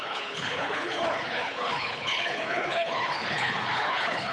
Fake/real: fake